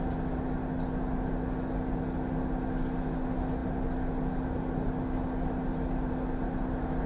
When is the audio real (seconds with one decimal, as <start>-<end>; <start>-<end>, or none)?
0.0-7.1